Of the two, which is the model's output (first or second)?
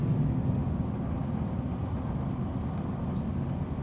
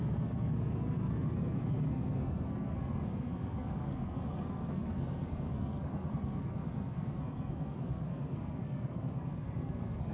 second